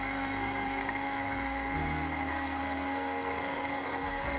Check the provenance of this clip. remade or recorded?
remade